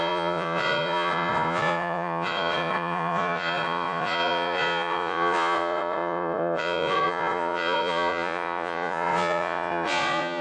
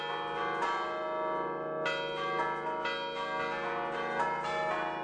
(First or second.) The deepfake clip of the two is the first